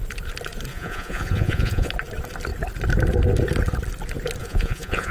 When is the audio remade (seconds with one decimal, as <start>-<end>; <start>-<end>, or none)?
0.7-1.9; 4.4-5.1